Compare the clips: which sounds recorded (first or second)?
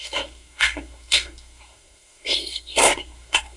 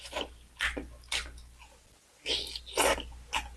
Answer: second